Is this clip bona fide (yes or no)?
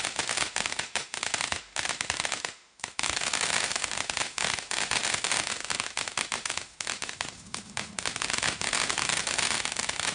no